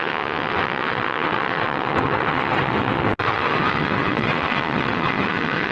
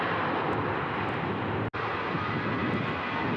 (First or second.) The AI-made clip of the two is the first